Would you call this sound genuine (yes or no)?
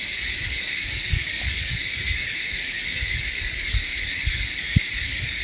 no